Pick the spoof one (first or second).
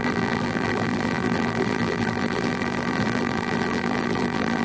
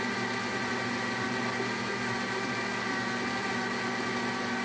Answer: first